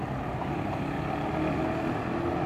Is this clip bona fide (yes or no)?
yes